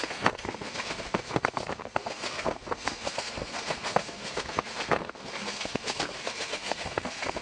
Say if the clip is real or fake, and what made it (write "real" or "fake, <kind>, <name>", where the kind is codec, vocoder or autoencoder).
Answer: fake, codec, SNAC